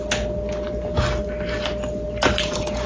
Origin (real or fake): real